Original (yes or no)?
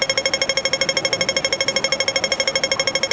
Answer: yes